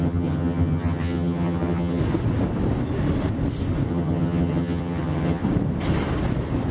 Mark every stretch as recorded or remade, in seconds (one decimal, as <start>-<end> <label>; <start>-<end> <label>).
0.0-2.0 remade; 2.0-3.9 recorded; 3.9-5.4 remade; 5.4-6.7 recorded